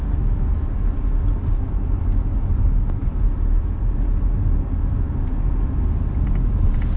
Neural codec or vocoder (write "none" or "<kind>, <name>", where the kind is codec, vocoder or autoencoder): none